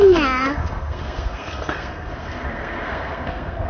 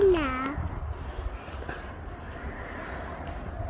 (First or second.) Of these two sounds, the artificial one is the first